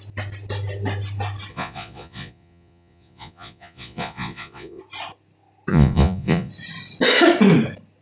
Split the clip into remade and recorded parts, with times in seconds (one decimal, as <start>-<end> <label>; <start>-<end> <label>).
0.0-1.5 recorded; 1.5-4.8 remade; 4.8-5.7 recorded; 5.7-6.5 remade; 6.5-8.0 recorded